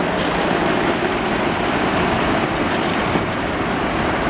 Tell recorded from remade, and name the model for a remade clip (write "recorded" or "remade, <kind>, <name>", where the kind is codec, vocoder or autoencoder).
remade, vocoder, BigVGAN v2